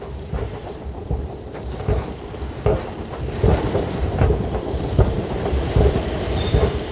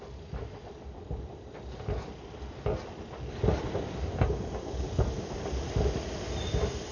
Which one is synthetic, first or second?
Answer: first